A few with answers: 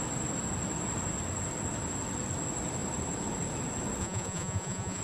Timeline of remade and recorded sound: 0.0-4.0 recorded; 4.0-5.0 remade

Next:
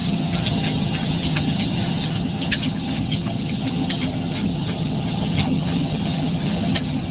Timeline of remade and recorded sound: 0.0-7.1 remade

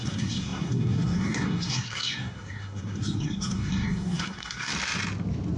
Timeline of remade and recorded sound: 0.0-4.7 remade; 4.7-5.6 recorded

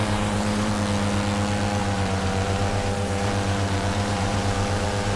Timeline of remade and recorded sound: 0.0-0.7 remade; 0.7-1.8 recorded; 1.8-5.2 remade